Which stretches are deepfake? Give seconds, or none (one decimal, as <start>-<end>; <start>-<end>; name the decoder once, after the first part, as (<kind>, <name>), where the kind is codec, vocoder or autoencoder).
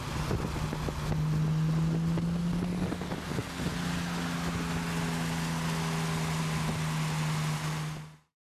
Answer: none